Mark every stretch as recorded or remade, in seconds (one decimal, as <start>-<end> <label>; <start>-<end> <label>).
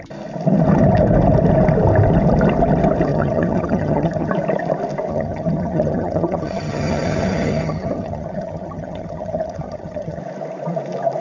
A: 0.0-3.1 recorded; 3.1-4.3 remade; 4.3-5.1 recorded; 5.1-10.2 remade; 10.2-11.2 recorded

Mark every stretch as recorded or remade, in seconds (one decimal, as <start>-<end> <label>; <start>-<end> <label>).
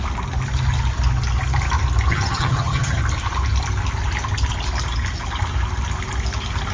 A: 0.0-2.1 recorded; 2.1-3.0 remade; 3.0-6.7 recorded